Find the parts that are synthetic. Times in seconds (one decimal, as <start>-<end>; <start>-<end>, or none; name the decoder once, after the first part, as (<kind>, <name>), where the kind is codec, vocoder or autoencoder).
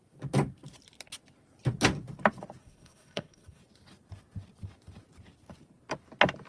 2.6-3.6 (codec, SNAC)